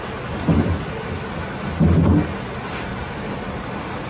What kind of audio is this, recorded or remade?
recorded